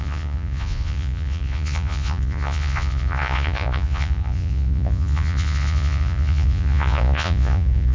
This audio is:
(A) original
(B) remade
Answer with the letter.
B